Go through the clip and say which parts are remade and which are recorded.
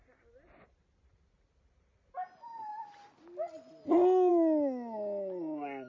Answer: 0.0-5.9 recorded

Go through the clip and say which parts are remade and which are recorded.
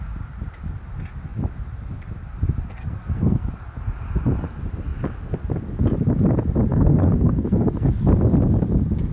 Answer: 0.0-2.8 recorded; 2.8-3.5 remade; 3.5-6.7 recorded; 6.7-8.0 remade; 8.0-9.1 recorded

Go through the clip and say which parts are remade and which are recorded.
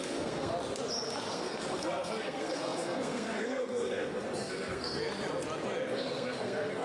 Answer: 0.0-0.5 remade; 0.5-1.3 recorded; 1.3-5.0 remade; 5.0-5.9 recorded; 5.9-6.8 remade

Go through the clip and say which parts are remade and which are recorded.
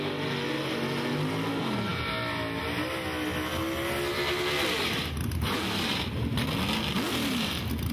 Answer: 0.0-7.9 recorded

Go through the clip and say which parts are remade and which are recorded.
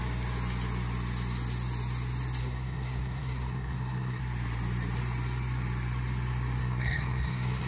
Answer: 0.0-2.4 recorded; 2.4-4.2 remade; 4.2-6.6 recorded; 6.6-7.7 remade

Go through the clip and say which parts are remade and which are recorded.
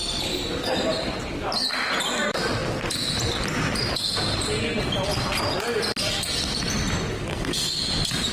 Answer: 0.0-7.3 recorded; 7.3-7.8 remade; 7.8-8.3 recorded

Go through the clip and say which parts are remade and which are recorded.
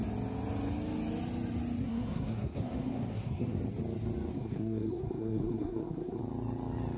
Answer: 0.0-1.8 recorded; 1.8-3.6 remade; 3.6-4.3 recorded; 4.3-6.2 remade; 6.2-7.0 recorded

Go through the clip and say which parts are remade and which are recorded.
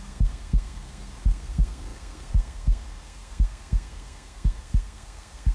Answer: 0.0-5.5 remade